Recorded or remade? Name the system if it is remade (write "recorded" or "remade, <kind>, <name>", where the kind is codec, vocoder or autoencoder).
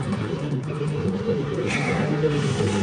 remade, codec, SNAC